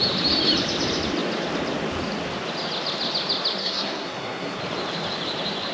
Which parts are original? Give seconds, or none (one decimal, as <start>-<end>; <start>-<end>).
0.0-3.6; 4.6-5.7